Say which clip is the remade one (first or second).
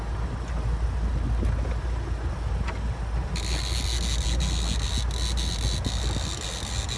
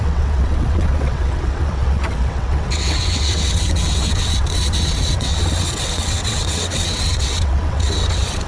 second